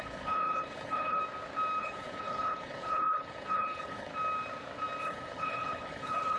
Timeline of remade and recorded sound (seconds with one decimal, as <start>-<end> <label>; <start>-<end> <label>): 0.0-1.2 remade; 1.2-1.8 recorded; 1.8-4.1 remade; 4.1-5.0 recorded; 5.0-6.4 remade